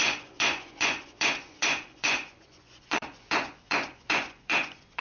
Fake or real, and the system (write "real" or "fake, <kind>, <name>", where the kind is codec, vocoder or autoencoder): fake, vocoder, Vocos